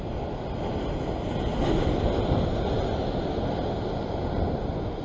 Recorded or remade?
recorded